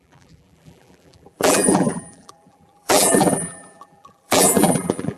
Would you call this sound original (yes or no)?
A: no